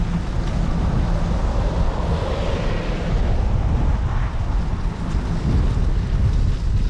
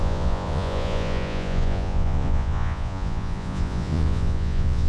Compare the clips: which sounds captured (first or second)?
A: first